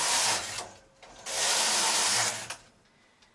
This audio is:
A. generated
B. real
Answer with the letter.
B